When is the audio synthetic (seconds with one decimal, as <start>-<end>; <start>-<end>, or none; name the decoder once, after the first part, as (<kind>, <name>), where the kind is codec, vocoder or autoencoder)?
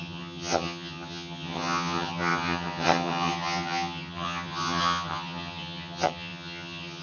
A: 0.0-7.0 (vocoder, HiFi-GAN)